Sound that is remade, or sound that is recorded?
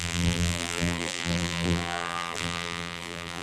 remade